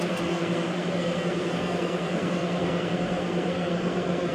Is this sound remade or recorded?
remade